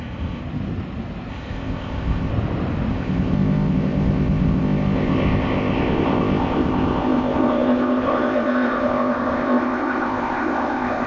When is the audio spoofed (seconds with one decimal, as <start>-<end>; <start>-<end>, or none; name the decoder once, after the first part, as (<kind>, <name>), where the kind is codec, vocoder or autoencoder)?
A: 0.0-0.4 (codec, ZipCodec); 1.3-2.3; 2.9-11.1